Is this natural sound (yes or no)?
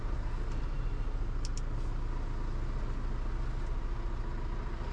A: yes